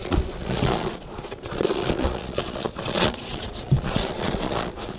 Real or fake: fake